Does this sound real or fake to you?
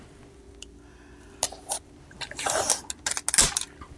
real